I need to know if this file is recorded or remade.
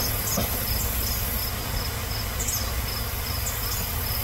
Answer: recorded